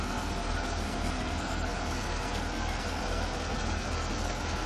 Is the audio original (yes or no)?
no